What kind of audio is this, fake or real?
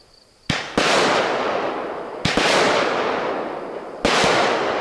real